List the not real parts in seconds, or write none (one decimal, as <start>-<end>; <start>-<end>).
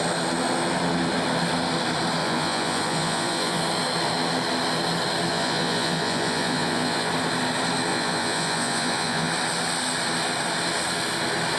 2.2-3.6; 5.3-7.1; 7.9-9.3